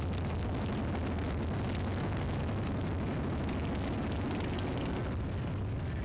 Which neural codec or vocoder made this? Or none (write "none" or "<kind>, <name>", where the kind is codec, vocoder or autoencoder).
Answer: none